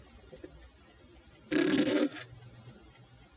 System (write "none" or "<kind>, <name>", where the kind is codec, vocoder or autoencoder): none